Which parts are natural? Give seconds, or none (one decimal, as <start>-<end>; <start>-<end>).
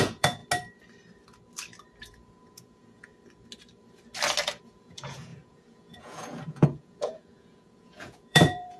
0.4-2.0; 3.1-4.6